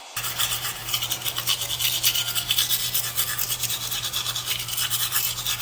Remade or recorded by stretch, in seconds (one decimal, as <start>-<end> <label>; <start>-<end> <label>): 0.0-5.6 recorded